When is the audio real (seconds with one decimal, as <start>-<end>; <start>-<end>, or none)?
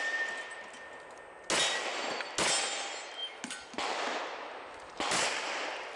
0.0-6.0